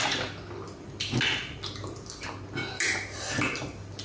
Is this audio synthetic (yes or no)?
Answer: no